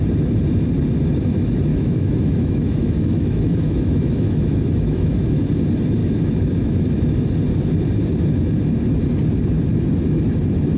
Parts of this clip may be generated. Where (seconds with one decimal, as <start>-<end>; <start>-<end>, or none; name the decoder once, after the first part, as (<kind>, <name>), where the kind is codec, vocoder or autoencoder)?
1.7-5.5 (autoencoder, DAC-VAE); 6.0-7.0